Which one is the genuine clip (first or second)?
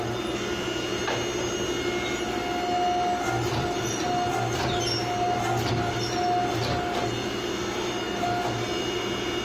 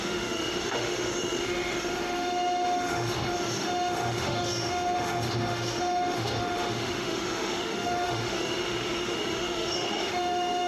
first